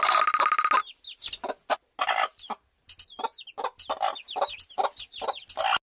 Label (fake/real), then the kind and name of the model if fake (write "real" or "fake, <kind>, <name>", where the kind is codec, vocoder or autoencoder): real